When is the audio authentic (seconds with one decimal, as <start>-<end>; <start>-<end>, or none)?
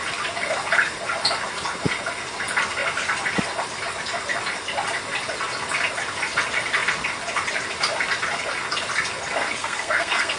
0.0-9.6